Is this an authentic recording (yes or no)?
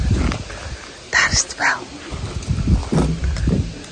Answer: yes